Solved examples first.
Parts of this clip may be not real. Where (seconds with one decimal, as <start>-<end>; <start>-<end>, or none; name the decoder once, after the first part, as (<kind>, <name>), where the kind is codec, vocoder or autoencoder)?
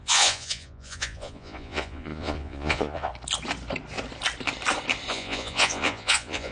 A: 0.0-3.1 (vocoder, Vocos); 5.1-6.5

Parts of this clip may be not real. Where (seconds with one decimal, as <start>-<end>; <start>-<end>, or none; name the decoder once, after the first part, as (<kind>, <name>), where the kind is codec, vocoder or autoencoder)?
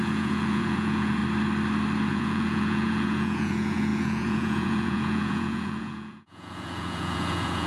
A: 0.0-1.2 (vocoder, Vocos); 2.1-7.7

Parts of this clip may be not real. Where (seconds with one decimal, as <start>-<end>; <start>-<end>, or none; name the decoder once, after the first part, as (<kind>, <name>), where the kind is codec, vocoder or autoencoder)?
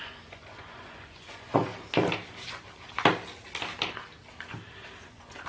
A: 0.0-1.7 (vocoder, Vocos); 5.0-5.5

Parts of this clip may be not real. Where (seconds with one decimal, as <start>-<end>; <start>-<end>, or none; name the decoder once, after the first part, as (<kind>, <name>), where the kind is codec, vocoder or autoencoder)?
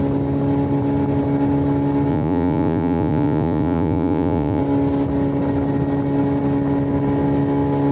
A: 2.1-4.6 (vocoder, Vocos)